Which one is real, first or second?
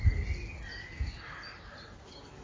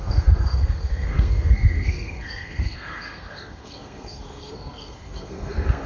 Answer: first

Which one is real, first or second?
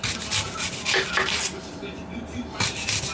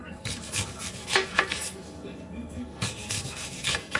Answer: first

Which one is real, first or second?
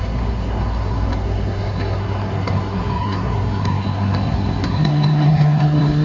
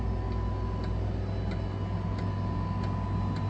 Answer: second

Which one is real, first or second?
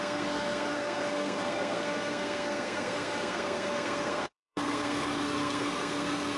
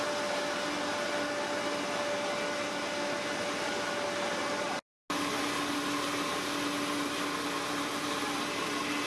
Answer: second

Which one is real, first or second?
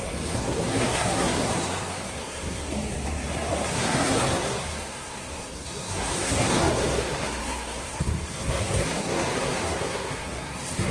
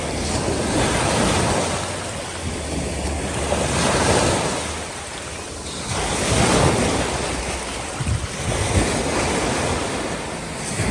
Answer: second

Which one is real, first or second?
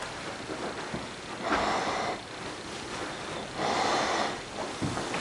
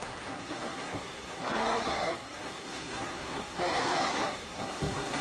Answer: first